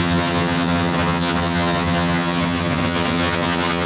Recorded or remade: remade